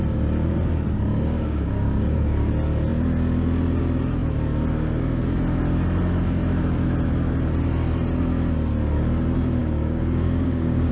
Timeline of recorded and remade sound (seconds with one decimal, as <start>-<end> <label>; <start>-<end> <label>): 0.0-1.1 recorded; 1.1-2.5 remade; 2.5-9.6 recorded; 9.6-10.9 remade